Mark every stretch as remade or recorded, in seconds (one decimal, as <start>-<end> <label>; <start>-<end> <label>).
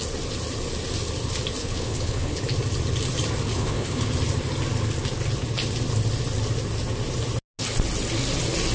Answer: 0.0-1.6 recorded; 1.6-2.4 remade; 2.4-3.5 recorded; 3.5-4.1 remade; 4.1-8.7 recorded